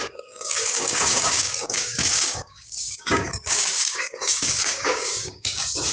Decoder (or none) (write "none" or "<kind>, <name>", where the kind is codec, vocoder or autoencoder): codec, DAC